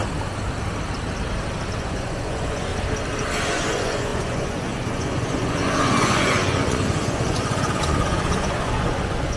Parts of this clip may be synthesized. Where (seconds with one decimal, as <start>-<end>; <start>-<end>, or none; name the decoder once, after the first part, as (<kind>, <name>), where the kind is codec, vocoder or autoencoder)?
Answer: 1.8-2.7 (vocoder, Vocos); 3.4-9.4